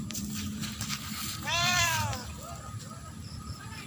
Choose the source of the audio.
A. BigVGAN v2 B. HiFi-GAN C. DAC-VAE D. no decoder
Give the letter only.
A